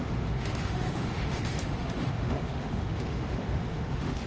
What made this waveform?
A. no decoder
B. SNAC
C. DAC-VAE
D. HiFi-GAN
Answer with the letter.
C